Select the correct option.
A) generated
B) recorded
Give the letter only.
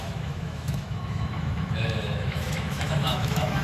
A